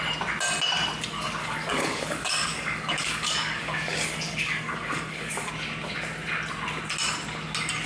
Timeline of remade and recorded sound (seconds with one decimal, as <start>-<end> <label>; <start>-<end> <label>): 0.0-1.4 recorded; 1.4-5.5 remade; 5.5-7.9 recorded